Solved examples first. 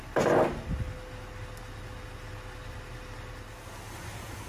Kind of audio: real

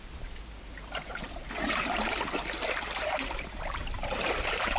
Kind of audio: fake